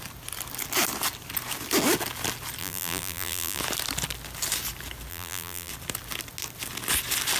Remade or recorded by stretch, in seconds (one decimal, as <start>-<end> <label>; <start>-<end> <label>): 0.0-2.6 recorded; 2.6-3.6 remade; 3.6-5.1 recorded; 5.1-5.7 remade; 5.7-7.4 recorded